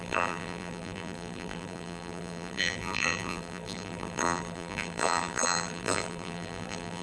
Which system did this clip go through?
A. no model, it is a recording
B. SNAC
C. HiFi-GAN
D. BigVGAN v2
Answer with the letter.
D